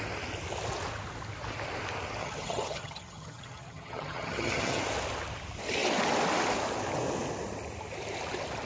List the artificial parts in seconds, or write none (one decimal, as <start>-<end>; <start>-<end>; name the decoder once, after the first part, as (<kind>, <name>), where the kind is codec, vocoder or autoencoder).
2.2-4.8 (vocoder, HiFi-GAN)